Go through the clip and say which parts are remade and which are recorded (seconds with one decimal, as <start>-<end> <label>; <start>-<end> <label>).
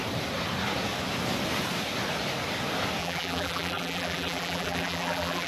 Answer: 0.0-3.0 recorded; 3.0-5.5 remade